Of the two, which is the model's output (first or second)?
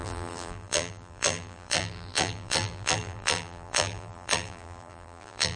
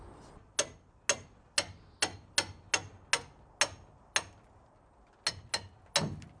first